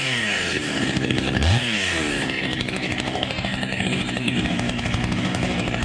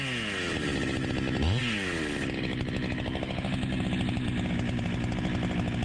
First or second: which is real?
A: second